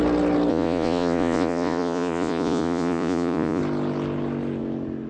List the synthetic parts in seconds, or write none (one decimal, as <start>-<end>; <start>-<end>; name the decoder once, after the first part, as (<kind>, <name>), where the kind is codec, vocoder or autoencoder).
0.5-3.6 (vocoder, Vocos)